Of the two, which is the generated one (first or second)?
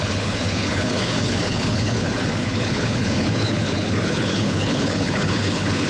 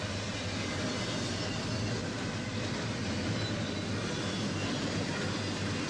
first